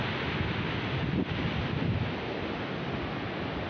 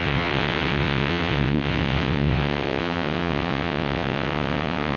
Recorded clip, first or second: first